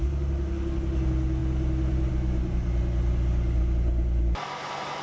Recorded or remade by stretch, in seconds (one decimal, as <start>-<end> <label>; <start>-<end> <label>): 0.0-5.0 recorded